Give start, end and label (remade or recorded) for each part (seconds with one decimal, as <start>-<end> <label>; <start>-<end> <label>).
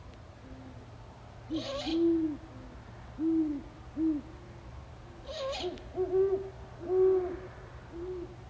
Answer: 0.0-8.5 recorded